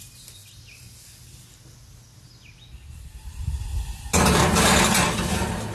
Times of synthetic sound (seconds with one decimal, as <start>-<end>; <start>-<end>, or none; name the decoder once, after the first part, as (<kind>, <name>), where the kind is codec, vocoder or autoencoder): none